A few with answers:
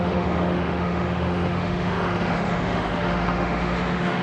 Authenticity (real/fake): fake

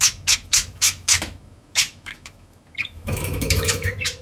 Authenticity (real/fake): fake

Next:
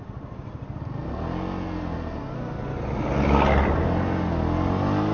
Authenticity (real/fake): real